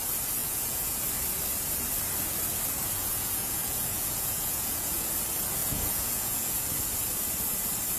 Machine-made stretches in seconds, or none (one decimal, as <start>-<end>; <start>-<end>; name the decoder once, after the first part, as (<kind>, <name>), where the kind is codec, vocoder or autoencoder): 0.4-1.0 (vocoder, Vocos); 3.0-5.1; 5.6-6.6